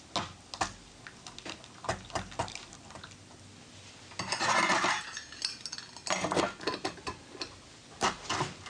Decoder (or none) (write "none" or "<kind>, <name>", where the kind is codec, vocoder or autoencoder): none